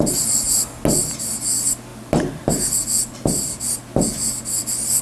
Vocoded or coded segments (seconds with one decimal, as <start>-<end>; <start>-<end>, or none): 1.9-2.4; 3.0-3.8

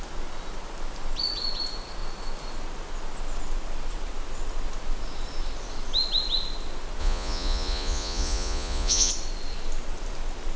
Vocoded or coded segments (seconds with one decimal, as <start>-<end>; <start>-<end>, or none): 7.0-9.1

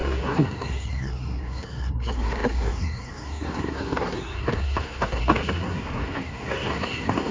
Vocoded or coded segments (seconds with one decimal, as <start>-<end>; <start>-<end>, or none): 0.0-7.3

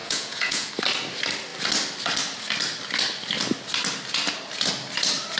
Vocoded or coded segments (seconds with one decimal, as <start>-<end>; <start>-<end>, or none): 0.0-0.7